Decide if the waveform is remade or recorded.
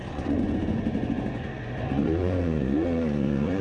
remade